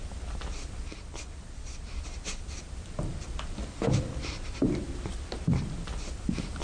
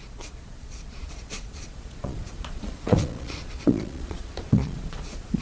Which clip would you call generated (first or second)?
second